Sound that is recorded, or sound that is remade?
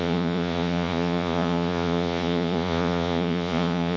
remade